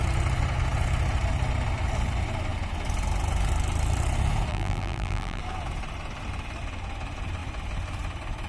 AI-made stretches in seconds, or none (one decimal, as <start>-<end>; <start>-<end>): 4.5-5.4